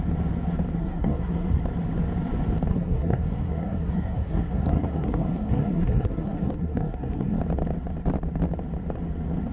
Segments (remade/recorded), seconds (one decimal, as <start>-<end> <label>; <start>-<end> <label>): 0.0-0.8 recorded; 0.8-1.6 remade; 1.6-2.7 recorded; 2.7-7.4 remade; 7.4-9.5 recorded